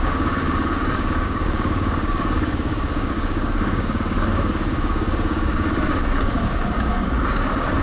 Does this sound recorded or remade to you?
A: remade